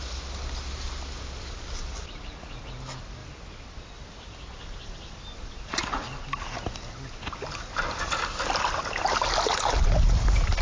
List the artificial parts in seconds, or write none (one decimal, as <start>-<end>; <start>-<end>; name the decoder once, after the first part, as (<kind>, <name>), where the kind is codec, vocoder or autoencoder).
none

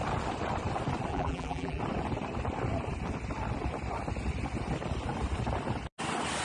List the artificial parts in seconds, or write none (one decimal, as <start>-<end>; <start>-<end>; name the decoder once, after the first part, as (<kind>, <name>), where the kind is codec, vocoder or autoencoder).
1.1-1.8 (vocoder, BigVGAN v2)